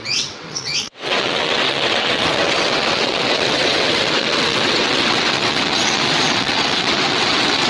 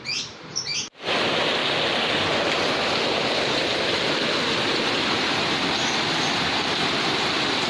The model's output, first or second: first